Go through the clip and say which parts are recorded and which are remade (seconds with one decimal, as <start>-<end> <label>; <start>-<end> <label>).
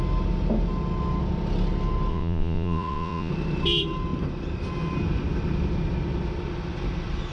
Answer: 0.0-2.1 recorded; 2.1-3.3 remade; 3.3-7.3 recorded